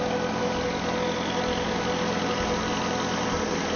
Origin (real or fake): real